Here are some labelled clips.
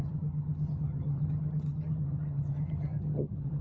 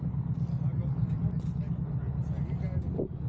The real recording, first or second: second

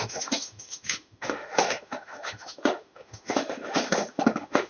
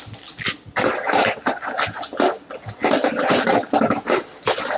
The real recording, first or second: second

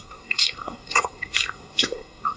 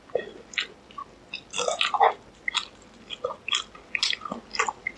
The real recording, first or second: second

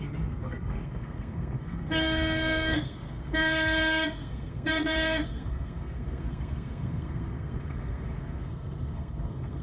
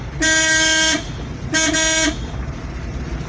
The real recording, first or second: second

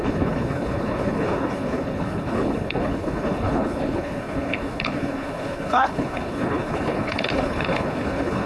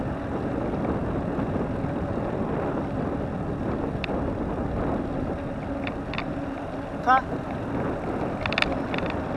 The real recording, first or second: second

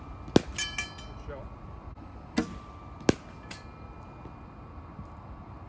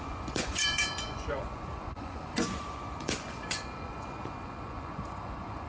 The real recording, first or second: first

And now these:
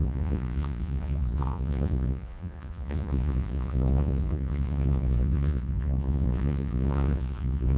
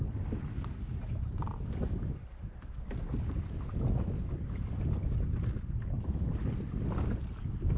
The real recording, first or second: second